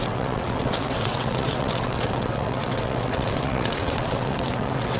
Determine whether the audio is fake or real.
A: fake